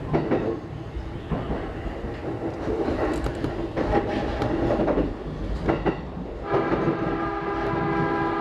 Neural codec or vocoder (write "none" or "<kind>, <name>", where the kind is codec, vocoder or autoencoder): none